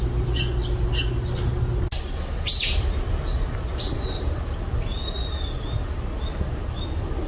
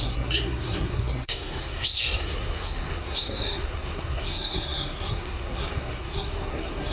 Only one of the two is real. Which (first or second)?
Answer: first